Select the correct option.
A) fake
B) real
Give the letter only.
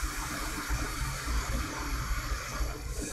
A